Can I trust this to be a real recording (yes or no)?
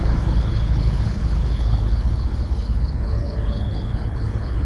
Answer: no